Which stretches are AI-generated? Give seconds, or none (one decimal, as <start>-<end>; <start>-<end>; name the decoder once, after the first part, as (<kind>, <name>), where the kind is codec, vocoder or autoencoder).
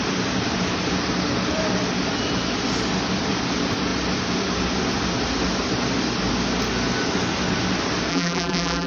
8.1-8.9 (vocoder, BigVGAN v2)